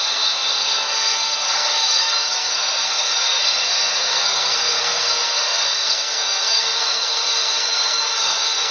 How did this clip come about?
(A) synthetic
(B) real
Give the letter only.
A